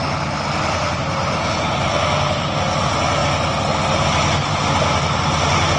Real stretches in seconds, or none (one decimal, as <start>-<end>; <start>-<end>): 0.0-5.8